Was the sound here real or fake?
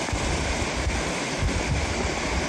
real